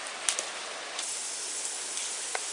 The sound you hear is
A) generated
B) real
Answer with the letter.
B